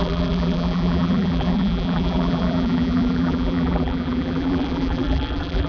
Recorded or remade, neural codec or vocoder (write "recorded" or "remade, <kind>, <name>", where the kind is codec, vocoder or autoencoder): remade, vocoder, BigVGAN v2